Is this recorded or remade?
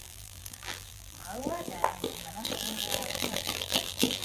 remade